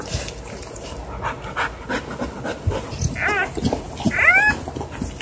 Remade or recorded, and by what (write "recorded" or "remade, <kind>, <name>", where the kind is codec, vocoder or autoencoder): recorded